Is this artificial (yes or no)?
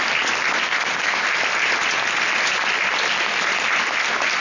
no